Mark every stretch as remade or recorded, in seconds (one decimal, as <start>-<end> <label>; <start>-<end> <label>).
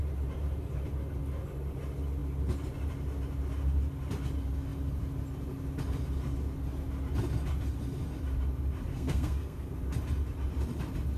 0.0-8.9 recorded; 8.9-9.7 remade; 9.7-11.2 recorded